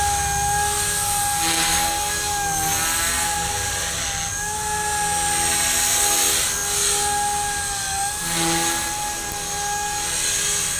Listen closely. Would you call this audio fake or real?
real